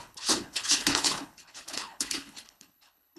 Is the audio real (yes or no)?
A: no